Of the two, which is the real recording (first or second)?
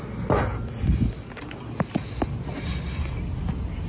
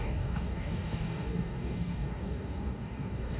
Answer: first